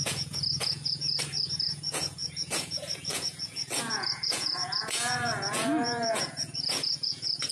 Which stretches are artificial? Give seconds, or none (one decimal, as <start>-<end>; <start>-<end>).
0.0-7.5